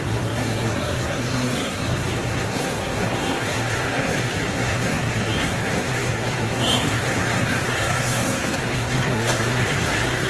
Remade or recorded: remade